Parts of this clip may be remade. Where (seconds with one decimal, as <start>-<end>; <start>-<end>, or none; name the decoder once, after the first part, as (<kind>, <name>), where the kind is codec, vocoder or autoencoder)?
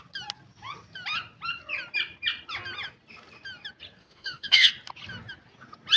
4.0-4.7 (autoencoder, DAC-VAE)